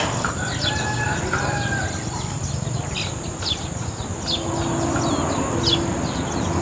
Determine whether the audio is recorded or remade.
recorded